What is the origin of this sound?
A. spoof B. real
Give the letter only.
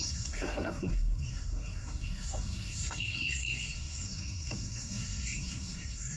A